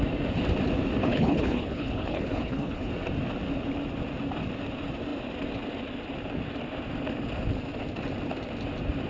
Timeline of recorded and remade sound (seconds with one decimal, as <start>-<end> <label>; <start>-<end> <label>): 0.0-1.0 recorded; 1.0-2.9 remade; 2.9-9.1 recorded